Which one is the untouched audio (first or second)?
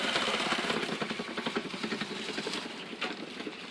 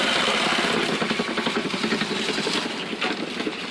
second